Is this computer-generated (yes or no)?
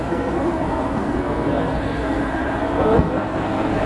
yes